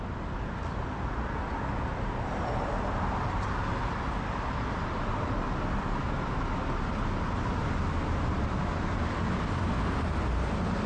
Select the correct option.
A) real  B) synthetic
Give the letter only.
A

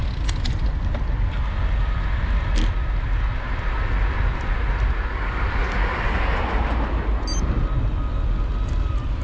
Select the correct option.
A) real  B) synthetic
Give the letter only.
A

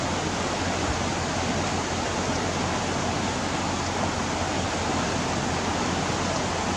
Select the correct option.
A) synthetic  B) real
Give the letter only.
B